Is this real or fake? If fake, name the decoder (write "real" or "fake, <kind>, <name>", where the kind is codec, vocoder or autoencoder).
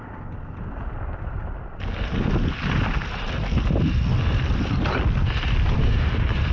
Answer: real